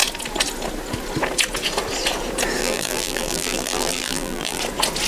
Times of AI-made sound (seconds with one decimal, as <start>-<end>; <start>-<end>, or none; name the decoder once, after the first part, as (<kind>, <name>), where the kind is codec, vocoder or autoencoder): 2.6-4.6 (vocoder, BigVGAN v2)